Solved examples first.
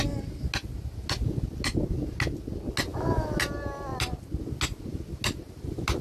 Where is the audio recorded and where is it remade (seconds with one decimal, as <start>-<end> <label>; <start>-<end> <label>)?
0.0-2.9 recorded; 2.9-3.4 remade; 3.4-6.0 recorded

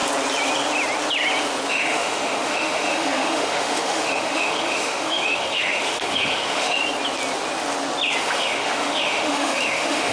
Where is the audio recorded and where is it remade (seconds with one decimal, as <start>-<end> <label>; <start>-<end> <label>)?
0.0-1.7 recorded; 1.7-6.8 remade; 6.8-8.2 recorded; 8.2-10.1 remade

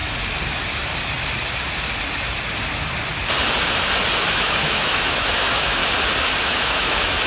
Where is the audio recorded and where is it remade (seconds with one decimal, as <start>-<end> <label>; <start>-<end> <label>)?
0.0-4.3 recorded; 4.3-5.8 remade; 5.8-6.4 recorded; 6.4-7.3 remade

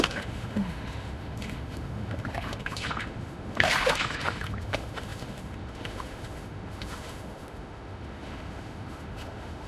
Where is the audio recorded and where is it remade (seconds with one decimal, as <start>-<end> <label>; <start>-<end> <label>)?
0.0-9.7 remade

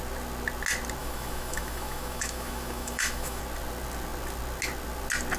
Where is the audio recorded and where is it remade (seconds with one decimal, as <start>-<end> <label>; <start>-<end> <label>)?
0.0-1.0 recorded; 1.0-3.4 remade; 3.4-5.4 recorded

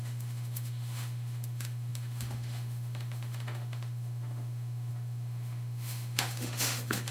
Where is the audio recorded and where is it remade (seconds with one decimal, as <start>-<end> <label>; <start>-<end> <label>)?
0.0-7.1 remade